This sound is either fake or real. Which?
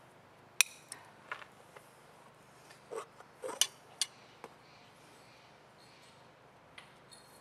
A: real